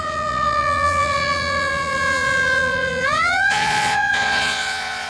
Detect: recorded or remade remade